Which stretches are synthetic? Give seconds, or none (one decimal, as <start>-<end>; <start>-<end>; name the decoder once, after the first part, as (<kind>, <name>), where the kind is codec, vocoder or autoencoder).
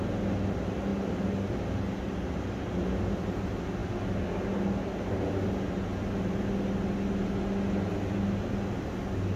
none